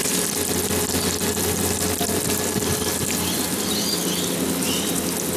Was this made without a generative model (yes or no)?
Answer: yes